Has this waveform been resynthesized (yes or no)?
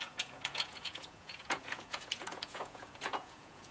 yes